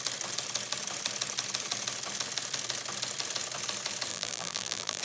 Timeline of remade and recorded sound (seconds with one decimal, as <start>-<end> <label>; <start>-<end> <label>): 0.0-4.1 recorded; 4.1-5.0 remade